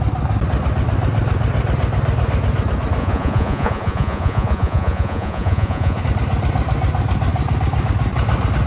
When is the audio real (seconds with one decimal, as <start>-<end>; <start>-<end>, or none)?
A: 0.0-3.0; 6.0-8.7